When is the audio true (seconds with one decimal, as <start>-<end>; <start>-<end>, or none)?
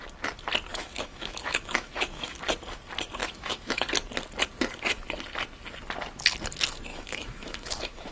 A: 0.0-0.7; 2.4-3.2; 3.9-6.9